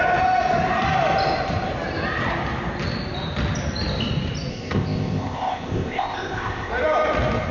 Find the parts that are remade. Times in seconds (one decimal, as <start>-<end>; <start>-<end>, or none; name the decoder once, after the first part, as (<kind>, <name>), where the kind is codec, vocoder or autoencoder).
4.5-6.7 (codec, ZipCodec)